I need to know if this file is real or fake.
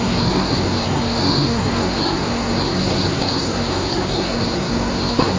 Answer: fake